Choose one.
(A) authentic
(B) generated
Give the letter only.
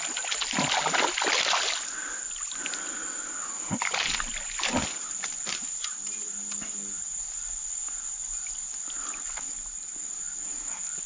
A